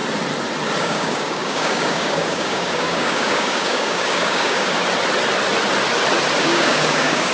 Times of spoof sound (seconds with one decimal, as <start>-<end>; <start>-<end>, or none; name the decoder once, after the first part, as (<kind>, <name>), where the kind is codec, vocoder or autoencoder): 0.8-4.8 (codec, DAC); 6.4-7.3